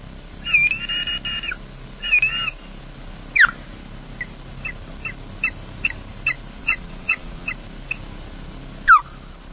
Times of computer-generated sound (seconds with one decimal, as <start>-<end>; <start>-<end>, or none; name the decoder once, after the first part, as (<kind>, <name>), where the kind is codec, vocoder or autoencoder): 6.6-7.5 (vocoder, Vocos)

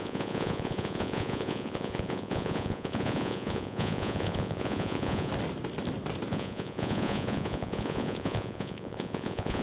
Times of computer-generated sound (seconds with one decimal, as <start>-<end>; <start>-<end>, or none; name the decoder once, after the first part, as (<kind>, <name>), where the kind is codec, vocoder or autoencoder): 0.0-5.3 (vocoder, Vocos); 6.3-9.6

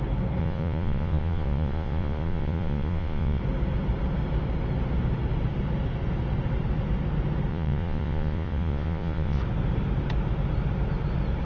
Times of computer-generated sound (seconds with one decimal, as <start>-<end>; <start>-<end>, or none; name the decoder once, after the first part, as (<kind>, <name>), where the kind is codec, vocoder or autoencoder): 0.4-3.4 (vocoder, Vocos); 7.5-9.4

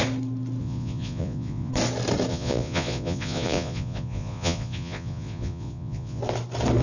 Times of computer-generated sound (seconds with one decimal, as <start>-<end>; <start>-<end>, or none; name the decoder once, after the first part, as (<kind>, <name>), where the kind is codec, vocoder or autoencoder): 0.6-1.7 (vocoder, Vocos); 2.3-6.2

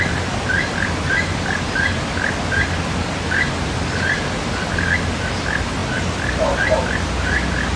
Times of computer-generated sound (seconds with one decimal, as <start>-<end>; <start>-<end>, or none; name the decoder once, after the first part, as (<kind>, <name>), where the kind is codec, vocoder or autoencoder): none

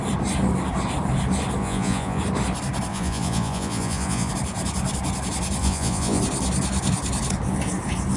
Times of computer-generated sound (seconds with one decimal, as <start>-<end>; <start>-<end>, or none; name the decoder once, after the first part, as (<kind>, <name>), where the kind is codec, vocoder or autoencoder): 1.6-2.2 (vocoder, Vocos); 2.9-4.3; 5.6-6.2

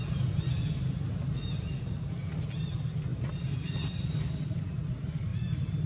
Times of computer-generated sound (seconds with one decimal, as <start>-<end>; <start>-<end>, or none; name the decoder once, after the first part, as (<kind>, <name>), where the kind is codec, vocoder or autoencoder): none

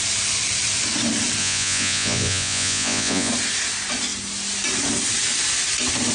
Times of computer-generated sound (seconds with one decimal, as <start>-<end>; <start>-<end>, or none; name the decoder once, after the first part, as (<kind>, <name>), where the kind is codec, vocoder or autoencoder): 1.4-3.3 (vocoder, Vocos)